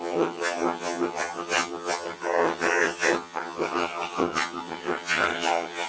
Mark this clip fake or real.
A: fake